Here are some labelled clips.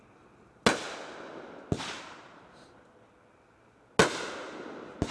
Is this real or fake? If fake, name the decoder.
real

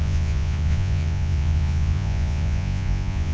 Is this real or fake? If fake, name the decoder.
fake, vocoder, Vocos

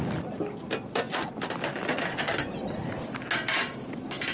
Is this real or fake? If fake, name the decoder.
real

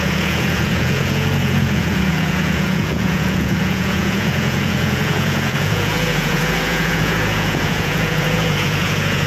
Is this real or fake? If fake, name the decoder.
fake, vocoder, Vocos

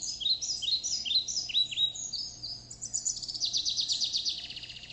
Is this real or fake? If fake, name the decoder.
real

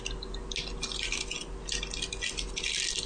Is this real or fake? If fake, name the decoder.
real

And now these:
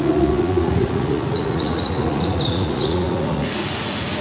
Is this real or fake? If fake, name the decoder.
fake, vocoder, Vocos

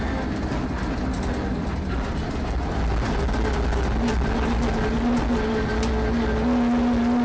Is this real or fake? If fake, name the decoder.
real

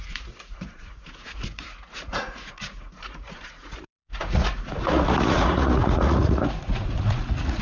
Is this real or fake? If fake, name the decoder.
fake, vocoder, Vocos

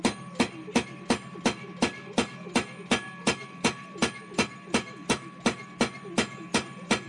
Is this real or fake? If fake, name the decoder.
real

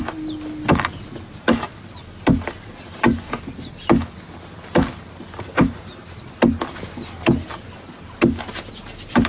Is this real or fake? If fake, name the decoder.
real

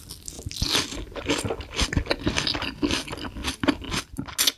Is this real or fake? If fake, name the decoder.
real